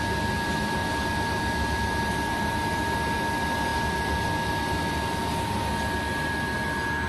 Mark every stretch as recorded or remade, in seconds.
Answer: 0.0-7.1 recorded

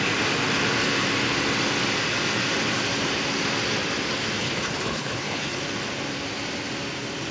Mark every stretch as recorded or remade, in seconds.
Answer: 0.0-4.4 recorded; 4.4-5.6 remade; 5.6-7.3 recorded

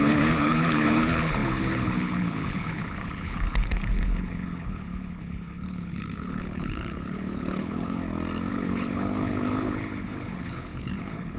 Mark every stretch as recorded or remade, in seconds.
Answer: 0.0-8.0 remade; 8.0-8.5 recorded; 8.5-11.4 remade

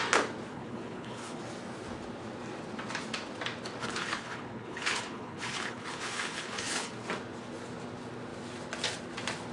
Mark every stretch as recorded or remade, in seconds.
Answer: 0.0-0.5 recorded; 0.5-1.4 remade; 1.4-3.8 recorded; 3.8-6.9 remade; 6.9-9.5 recorded

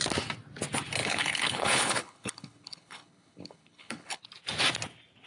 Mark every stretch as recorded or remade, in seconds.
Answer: 0.0-1.0 recorded; 1.0-4.2 remade; 4.2-5.3 recorded